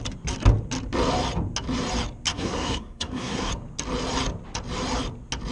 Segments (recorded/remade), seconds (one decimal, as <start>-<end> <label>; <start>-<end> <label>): 0.0-2.3 recorded; 2.3-3.5 remade; 3.5-5.5 recorded